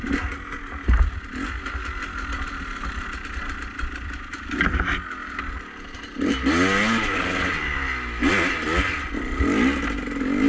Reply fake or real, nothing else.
real